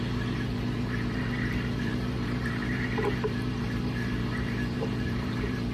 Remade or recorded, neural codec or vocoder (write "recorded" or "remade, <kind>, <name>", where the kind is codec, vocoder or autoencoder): remade, vocoder, BigVGAN v2